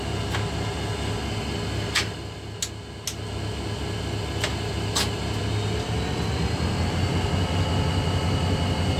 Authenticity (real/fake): real